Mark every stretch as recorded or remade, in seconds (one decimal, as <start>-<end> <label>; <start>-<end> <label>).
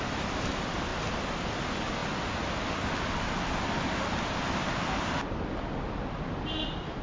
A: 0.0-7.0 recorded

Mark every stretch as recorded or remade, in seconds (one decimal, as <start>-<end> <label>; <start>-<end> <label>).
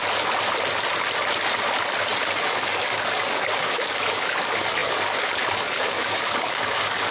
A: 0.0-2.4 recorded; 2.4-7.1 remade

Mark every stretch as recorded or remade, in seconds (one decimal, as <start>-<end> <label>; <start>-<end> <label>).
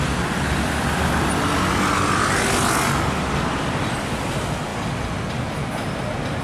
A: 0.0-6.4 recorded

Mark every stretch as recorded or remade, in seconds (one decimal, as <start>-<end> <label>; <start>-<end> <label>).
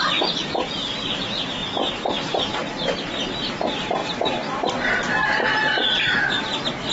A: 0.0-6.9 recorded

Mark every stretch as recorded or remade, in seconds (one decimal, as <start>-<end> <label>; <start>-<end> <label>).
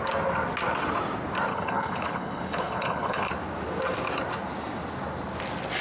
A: 0.0-1.5 recorded; 1.5-3.3 remade; 3.3-5.8 recorded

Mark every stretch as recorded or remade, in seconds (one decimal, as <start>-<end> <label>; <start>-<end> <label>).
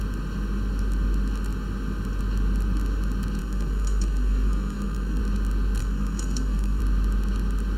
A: 0.0-3.4 recorded; 3.4-5.2 remade; 5.2-5.8 recorded; 5.8-6.8 remade; 6.8-7.8 recorded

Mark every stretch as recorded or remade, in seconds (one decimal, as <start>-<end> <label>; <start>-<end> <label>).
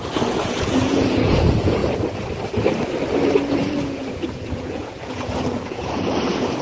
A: 0.0-1.8 remade; 1.8-3.5 recorded; 3.5-6.6 remade